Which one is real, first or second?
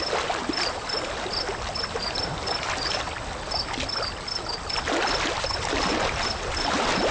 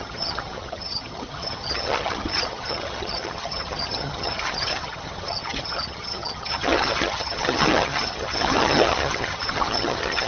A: first